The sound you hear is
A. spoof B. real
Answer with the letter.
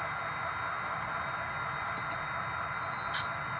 B